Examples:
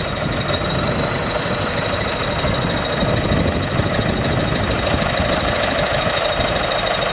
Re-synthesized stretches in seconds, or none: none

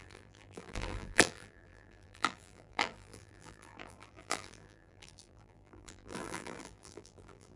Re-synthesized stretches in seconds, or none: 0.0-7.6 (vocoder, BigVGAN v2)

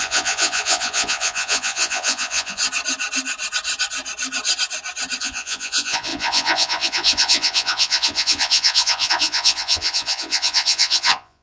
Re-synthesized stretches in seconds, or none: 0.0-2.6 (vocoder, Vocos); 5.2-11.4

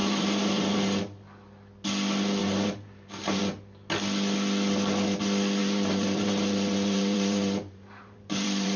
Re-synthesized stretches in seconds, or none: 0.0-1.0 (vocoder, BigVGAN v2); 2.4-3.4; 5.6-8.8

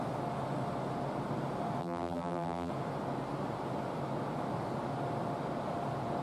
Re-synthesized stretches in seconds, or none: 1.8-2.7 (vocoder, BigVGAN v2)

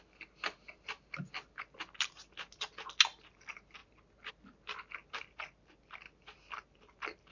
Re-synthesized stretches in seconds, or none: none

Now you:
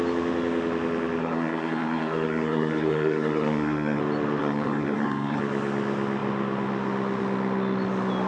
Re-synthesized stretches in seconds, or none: 1.2-4.0 (codec, SNAC); 4.4-5.4

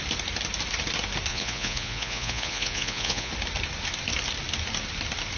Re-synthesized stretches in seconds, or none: 1.3-3.3 (vocoder, Vocos)